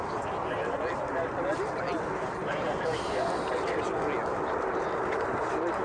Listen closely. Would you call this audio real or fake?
real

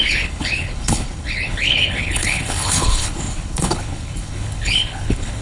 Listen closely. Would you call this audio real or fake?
fake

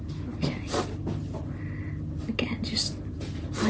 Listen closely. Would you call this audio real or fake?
real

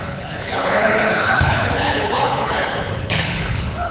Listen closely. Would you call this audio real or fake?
fake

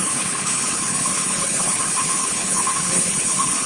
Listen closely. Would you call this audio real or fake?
fake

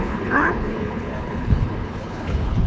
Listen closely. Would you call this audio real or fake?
fake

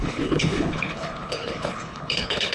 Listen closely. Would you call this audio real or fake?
fake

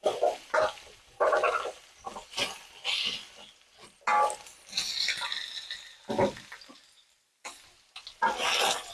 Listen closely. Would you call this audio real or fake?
real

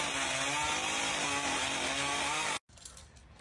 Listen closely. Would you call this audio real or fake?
real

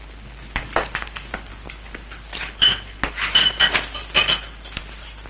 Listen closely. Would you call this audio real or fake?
real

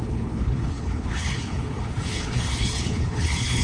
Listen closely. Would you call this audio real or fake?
fake